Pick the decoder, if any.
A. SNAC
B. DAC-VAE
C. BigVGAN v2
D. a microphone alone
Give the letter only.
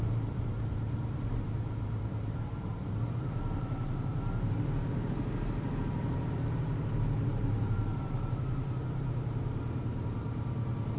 C